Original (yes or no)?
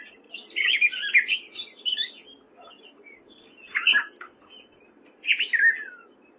yes